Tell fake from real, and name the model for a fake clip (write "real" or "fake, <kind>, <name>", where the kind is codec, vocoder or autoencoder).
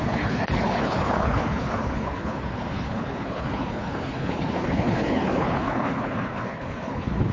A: fake, codec, HILCodec